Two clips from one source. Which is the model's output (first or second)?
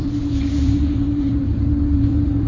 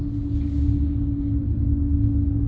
first